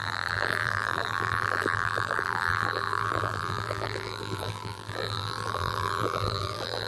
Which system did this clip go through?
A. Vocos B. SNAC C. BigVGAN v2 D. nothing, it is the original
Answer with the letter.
C